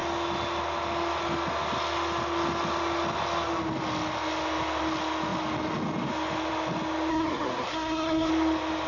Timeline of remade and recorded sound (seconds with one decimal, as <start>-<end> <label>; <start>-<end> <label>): 0.0-7.1 recorded; 7.1-8.3 remade; 8.3-8.9 recorded

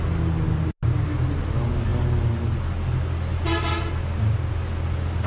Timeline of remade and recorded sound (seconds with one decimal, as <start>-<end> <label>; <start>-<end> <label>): 0.0-5.3 recorded

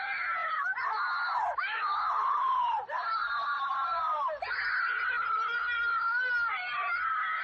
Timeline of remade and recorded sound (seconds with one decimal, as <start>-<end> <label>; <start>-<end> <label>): 0.0-7.4 recorded